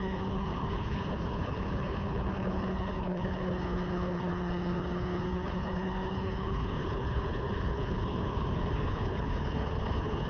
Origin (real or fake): fake